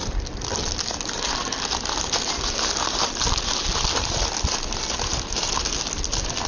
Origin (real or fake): real